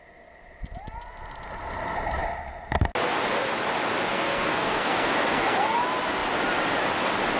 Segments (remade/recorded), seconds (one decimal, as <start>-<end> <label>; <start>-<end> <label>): 0.0-4.1 recorded; 4.1-5.8 remade; 5.8-7.4 recorded